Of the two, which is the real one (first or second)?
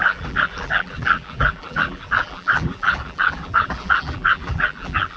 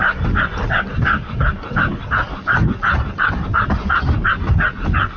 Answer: second